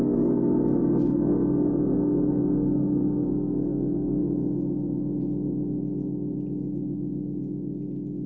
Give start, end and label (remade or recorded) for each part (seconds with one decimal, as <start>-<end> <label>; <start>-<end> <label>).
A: 0.0-4.2 remade; 4.2-8.3 recorded